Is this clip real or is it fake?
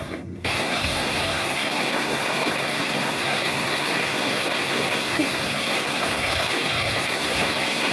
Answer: fake